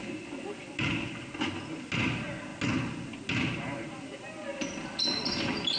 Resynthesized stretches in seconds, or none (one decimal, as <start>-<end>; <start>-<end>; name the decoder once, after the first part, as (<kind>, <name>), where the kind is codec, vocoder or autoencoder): none